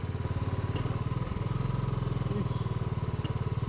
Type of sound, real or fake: real